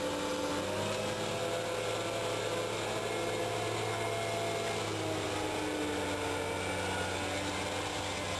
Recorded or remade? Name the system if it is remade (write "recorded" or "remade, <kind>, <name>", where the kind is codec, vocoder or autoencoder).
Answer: recorded